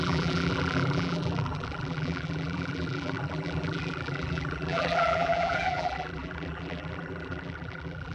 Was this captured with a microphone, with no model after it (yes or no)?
no